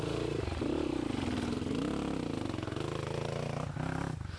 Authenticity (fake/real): real